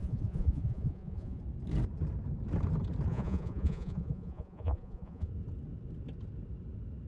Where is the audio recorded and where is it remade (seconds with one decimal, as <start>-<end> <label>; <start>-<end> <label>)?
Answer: 0.0-1.4 remade; 1.4-3.1 recorded; 3.1-5.3 remade; 5.3-7.1 recorded